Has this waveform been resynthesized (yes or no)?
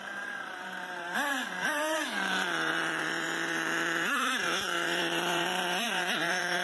yes